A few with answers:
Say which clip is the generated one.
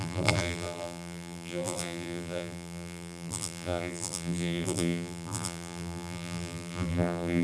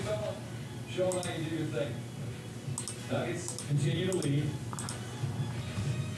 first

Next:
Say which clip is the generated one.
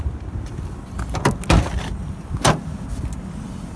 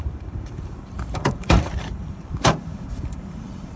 second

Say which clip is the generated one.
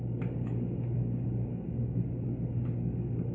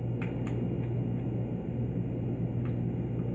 first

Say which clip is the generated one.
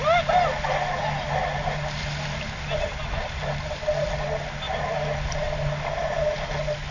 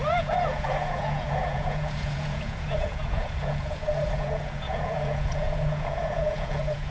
second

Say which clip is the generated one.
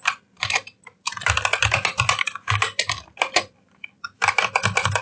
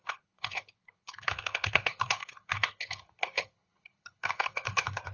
second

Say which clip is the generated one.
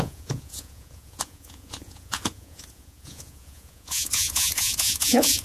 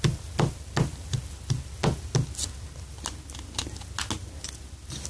first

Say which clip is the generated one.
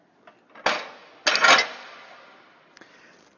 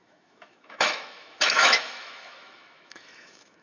second